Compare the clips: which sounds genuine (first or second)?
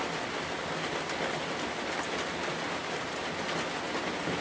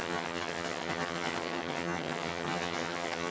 first